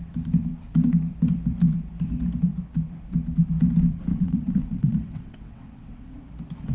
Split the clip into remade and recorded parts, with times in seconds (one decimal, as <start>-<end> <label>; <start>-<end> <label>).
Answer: 0.0-4.1 recorded; 4.1-6.2 remade; 6.2-6.7 recorded